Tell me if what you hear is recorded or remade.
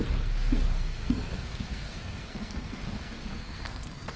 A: remade